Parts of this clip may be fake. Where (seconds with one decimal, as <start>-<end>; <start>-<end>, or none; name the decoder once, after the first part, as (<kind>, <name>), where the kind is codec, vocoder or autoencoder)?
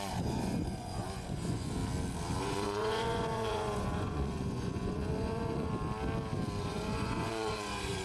0.0-1.8 (vocoder, Vocos); 2.4-5.7; 6.6-8.0